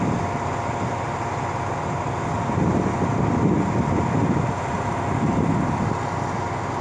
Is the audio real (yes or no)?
yes